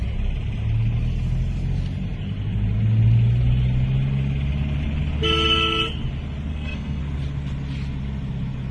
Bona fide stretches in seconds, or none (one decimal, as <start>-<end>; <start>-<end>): 0.0-6.5; 7.0-8.7